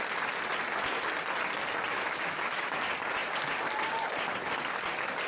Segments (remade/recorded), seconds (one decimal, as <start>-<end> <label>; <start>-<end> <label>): 0.0-1.9 recorded; 1.9-2.8 remade; 2.8-5.3 recorded